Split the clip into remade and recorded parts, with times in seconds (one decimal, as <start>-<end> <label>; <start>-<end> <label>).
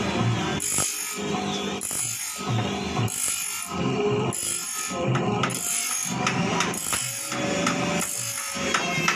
0.0-9.2 recorded